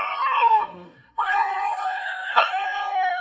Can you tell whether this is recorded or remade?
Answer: remade